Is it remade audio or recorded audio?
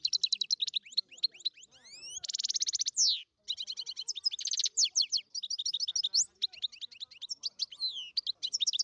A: recorded